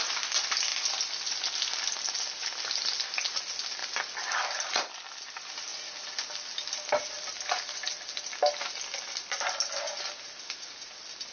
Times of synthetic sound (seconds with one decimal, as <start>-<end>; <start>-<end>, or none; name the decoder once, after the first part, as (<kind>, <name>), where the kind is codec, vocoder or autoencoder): none